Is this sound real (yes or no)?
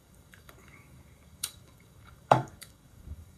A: no